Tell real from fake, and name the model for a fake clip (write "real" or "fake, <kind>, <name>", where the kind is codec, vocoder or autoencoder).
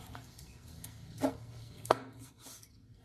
fake, codec, SNAC